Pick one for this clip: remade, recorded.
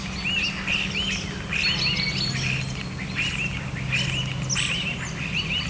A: recorded